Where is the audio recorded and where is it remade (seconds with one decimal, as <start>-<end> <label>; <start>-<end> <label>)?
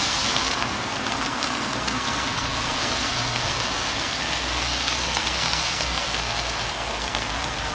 0.0-7.7 remade